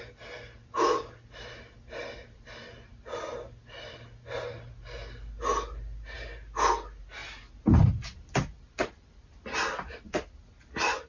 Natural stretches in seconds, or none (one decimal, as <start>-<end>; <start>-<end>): 0.0-11.1